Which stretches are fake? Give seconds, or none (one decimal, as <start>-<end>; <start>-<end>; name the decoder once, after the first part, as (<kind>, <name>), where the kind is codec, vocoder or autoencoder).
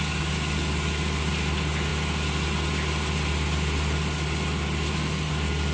none